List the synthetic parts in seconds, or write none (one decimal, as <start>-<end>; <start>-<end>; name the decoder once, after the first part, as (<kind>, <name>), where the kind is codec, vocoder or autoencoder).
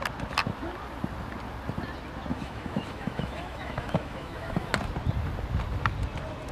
2.3-4.7 (autoencoder, DAC-VAE)